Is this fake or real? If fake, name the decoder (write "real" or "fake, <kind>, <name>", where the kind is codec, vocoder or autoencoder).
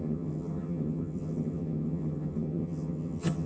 fake, vocoder, HiFi-GAN